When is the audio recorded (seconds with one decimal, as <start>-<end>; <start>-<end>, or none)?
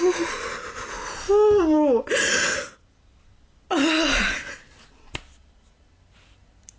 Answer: 0.0-6.8